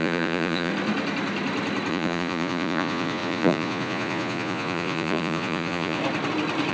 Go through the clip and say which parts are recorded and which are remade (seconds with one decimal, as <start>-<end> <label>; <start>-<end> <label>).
0.0-0.7 remade; 0.7-1.9 recorded; 1.9-6.0 remade; 6.0-6.7 recorded